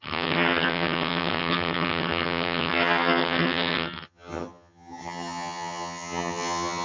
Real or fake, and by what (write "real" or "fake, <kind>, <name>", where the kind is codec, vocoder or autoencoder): fake, vocoder, HiFi-GAN